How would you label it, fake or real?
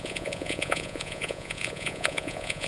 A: fake